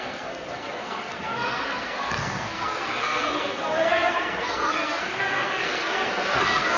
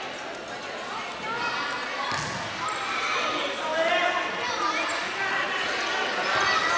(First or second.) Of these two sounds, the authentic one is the second